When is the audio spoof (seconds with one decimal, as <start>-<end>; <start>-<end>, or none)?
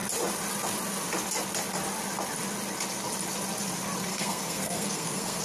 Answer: 4.1-5.4